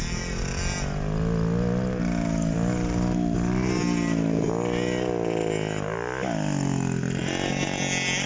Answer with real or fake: real